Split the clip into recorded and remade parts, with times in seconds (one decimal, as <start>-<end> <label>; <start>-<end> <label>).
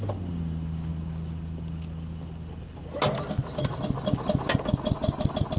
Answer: 0.0-5.6 recorded